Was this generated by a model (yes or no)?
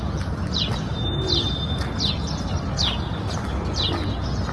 no